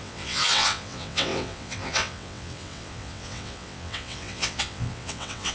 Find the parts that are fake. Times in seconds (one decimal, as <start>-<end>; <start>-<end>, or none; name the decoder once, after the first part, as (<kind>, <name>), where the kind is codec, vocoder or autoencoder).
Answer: 0.0-5.5 (vocoder, WaveNeXt)